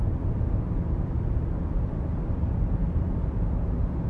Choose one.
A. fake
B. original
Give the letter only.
B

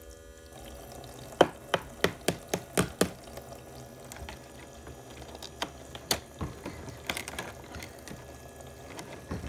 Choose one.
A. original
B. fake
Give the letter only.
A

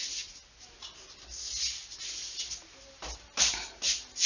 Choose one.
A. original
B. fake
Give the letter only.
A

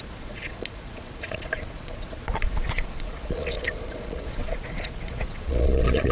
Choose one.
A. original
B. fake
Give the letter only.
B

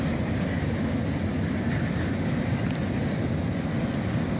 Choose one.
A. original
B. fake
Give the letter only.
A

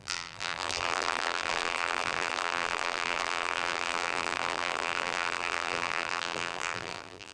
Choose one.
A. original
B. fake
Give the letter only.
B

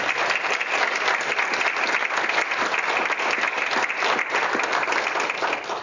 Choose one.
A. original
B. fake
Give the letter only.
A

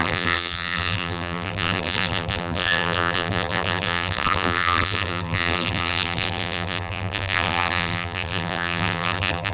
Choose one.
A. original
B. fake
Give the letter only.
B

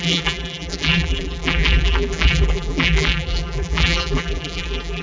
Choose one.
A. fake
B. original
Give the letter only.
A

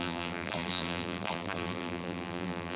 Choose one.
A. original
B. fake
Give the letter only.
B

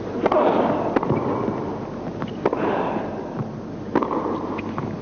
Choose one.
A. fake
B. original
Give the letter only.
B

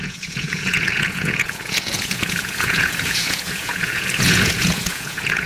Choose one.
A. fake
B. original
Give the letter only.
A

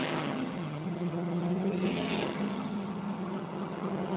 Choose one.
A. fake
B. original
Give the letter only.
A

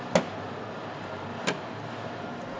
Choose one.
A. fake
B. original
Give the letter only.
B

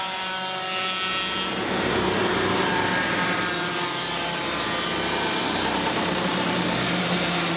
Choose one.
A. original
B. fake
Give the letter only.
A